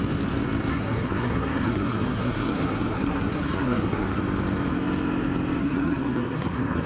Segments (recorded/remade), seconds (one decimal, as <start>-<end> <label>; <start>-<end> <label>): 0.0-0.7 recorded; 0.7-4.2 remade; 4.2-5.6 recorded; 5.6-6.9 remade